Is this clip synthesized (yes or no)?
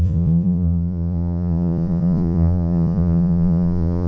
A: yes